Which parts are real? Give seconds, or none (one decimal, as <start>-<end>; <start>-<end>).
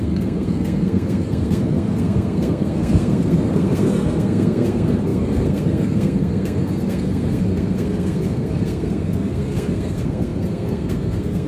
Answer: none